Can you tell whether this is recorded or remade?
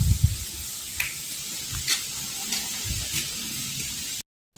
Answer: recorded